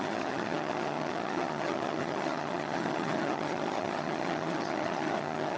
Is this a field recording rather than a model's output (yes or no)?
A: no